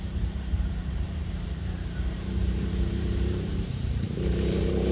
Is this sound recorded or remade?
remade